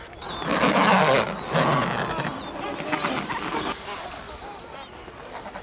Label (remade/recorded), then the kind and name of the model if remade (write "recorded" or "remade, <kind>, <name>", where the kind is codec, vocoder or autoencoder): recorded